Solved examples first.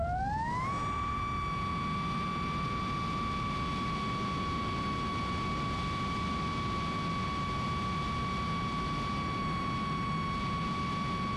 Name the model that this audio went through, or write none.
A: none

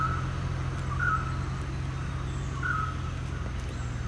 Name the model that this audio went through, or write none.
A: none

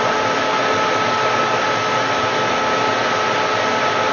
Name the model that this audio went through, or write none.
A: none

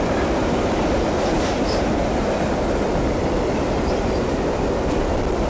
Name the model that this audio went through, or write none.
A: vocoder, BigVGAN v2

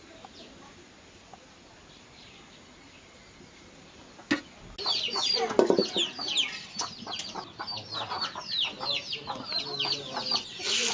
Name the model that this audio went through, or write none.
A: none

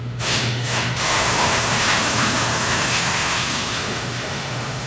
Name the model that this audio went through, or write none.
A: autoencoder, DAC-VAE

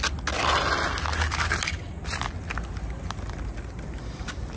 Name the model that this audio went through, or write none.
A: none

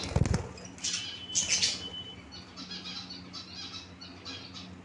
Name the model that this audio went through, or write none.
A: none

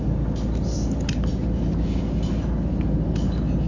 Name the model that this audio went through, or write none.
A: none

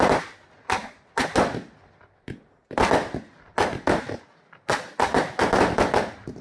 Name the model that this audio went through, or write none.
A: none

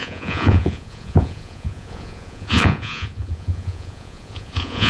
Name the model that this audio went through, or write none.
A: vocoder, Vocos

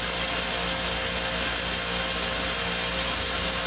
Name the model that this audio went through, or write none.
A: none